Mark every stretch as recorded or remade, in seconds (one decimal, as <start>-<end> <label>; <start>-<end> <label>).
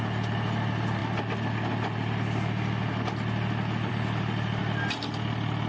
0.0-5.7 recorded